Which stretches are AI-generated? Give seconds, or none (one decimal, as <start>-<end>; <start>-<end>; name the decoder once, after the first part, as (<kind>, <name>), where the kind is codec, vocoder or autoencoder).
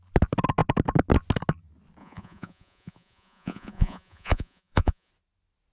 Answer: 2.0-5.1 (vocoder, Vocos)